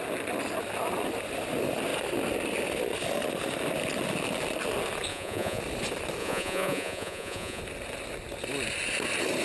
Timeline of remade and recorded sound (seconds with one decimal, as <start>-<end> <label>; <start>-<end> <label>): 0.0-5.1 recorded; 5.1-5.6 remade; 5.6-6.2 recorded; 6.2-7.6 remade; 7.6-9.4 recorded